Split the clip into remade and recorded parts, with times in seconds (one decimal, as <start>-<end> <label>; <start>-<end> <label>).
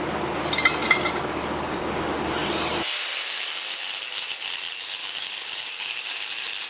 0.0-0.8 recorded; 0.8-3.8 remade; 3.8-5.0 recorded; 5.0-6.2 remade; 6.2-6.7 recorded